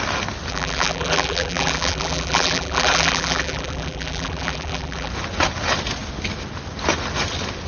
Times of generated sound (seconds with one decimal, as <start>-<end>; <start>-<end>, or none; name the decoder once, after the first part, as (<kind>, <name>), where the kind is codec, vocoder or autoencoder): 0.5-5.1 (vocoder, BigVGAN v2)